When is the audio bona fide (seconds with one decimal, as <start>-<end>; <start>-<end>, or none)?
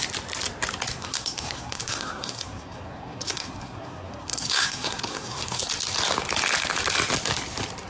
0.0-0.9; 5.6-7.9